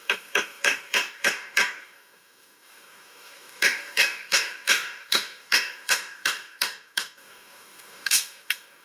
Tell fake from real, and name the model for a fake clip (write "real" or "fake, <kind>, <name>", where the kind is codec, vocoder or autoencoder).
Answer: fake, codec, DAC